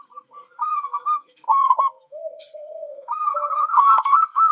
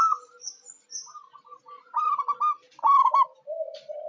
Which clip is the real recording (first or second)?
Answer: second